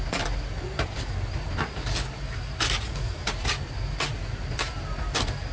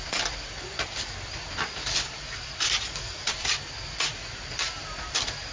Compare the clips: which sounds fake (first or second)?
second